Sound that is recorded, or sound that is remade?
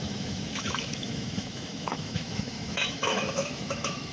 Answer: remade